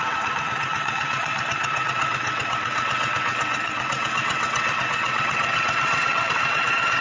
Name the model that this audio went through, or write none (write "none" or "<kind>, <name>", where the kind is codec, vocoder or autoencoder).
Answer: vocoder, WaveNeXt